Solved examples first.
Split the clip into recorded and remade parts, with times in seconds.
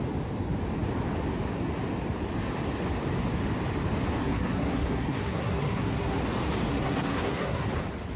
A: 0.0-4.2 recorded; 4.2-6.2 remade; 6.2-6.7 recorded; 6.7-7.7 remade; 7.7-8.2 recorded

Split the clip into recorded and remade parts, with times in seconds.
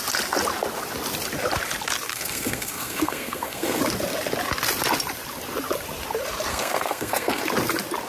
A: 0.0-2.1 recorded; 2.1-3.8 remade; 3.8-6.5 recorded; 6.5-7.4 remade; 7.4-8.1 recorded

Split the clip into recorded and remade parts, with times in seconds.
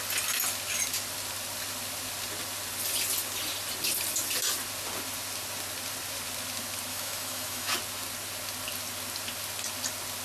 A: 0.0-6.9 recorded; 6.9-7.7 remade; 7.7-10.2 recorded